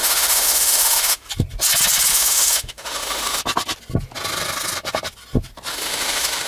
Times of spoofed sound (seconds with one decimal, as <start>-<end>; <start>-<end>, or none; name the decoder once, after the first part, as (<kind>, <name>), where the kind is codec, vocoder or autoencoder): 0.0-1.3 (autoencoder, DAC-VAE); 2.1-3.4; 5.7-6.5